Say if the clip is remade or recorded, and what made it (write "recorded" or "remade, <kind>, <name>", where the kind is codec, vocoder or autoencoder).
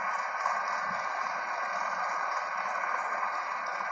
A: recorded